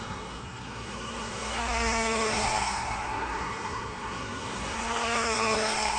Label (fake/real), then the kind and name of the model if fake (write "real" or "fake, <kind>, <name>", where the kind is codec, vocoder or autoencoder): fake, codec, SNAC